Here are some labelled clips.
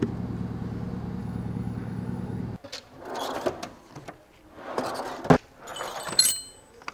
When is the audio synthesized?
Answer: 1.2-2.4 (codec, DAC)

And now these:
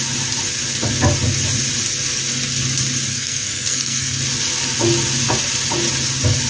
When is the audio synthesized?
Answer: 3.1-4.2 (codec, SNAC)

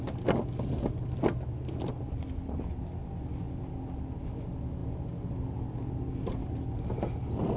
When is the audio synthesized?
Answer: none

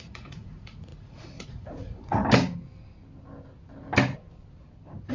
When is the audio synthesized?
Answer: 0.0-2.2 (vocoder, Vocos)

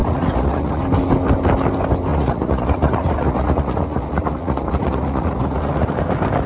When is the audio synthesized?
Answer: 0.0-0.8 (vocoder, Vocos); 2.1-6.0